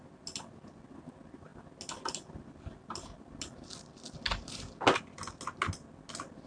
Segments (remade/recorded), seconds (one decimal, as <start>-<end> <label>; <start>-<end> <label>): 0.0-6.5 recorded